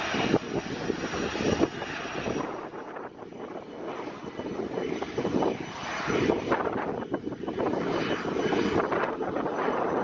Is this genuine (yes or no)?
yes